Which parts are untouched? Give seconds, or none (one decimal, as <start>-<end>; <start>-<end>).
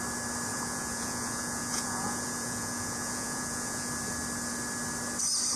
0.0-0.5; 3.9-5.6